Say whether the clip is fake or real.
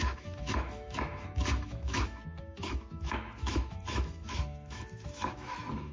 fake